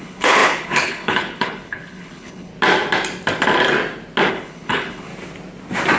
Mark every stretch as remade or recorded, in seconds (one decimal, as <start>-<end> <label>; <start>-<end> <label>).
0.0-2.5 remade; 2.5-4.3 recorded; 4.3-5.1 remade; 5.1-6.0 recorded